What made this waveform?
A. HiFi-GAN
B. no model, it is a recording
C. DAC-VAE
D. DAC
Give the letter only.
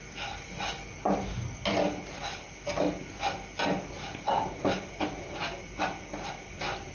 B